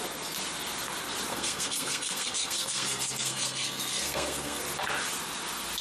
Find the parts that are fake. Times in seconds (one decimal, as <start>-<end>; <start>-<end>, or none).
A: 1.3-4.6